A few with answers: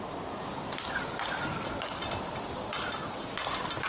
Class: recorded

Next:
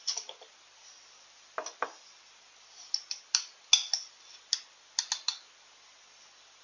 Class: recorded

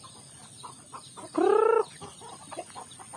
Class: recorded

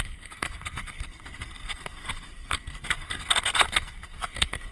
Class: remade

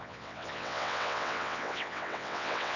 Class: remade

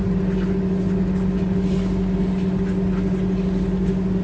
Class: recorded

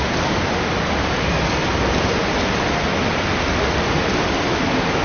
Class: recorded